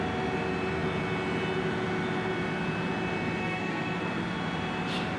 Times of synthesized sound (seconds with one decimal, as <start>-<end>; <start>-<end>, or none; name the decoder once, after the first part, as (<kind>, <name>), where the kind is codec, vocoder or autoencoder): 3.4-4.0 (codec, SNAC)